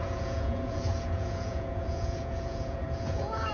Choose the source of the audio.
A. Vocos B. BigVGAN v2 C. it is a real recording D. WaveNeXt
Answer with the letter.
A